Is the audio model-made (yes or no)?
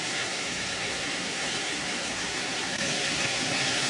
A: yes